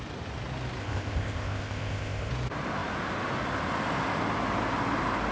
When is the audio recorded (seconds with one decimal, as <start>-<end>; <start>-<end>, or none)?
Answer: 0.0-0.8; 2.3-5.3